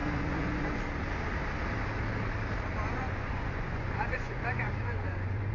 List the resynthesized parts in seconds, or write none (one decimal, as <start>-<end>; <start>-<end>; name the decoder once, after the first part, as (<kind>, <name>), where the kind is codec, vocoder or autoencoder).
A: 0.0-0.8 (vocoder, Vocos); 2.8-5.5